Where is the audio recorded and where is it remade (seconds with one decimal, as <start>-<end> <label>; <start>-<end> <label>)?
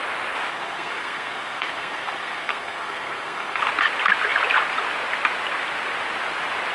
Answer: 0.0-0.5 recorded; 0.5-3.6 remade; 3.6-6.7 recorded